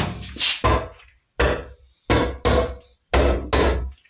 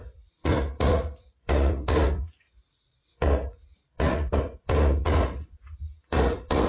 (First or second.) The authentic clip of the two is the first